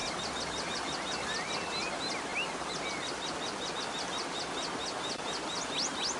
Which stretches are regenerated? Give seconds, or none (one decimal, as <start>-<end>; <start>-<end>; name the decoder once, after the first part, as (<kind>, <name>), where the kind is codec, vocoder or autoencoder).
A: none